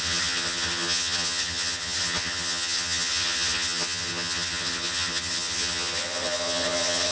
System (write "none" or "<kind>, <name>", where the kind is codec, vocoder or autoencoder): vocoder, HiFi-GAN